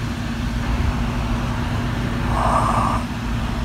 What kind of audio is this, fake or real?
real